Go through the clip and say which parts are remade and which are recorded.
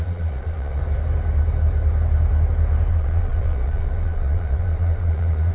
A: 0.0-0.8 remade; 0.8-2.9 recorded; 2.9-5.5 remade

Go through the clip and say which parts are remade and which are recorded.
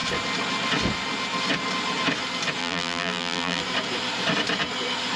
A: 0.0-2.6 recorded; 2.6-3.6 remade; 3.6-5.2 recorded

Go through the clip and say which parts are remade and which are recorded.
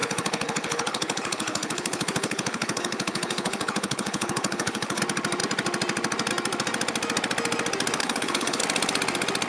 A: 0.0-5.0 remade; 5.0-8.0 recorded; 8.0-8.6 remade; 8.6-9.5 recorded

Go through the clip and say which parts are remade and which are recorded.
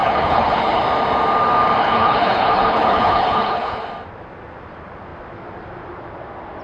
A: 0.0-0.8 remade; 0.8-1.8 recorded; 1.8-3.8 remade; 3.8-6.6 recorded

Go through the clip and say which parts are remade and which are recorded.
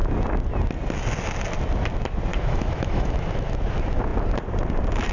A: 0.0-2.3 recorded; 2.3-3.6 remade; 3.6-5.1 recorded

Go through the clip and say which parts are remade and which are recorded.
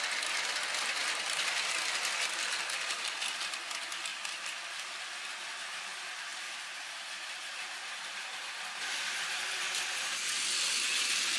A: 0.0-4.1 recorded; 4.1-4.7 remade; 4.7-6.3 recorded; 6.3-9.6 remade; 9.6-11.4 recorded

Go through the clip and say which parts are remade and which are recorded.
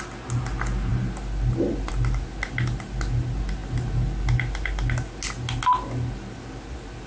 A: 0.0-7.1 recorded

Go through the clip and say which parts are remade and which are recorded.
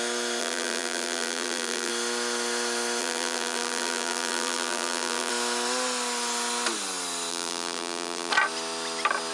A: 0.0-0.4 recorded; 0.4-1.9 remade; 1.9-3.0 recorded; 3.0-5.3 remade; 5.3-7.3 recorded; 7.3-8.3 remade; 8.3-9.3 recorded